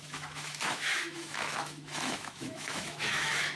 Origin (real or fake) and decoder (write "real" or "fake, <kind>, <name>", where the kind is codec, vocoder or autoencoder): fake, autoencoder, DAC-VAE